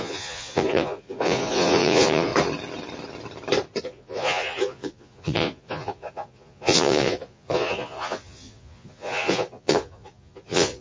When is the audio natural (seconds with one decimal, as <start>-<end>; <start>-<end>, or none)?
2.3-3.8